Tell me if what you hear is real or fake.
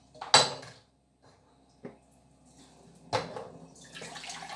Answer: real